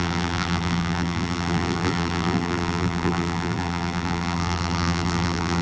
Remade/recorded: remade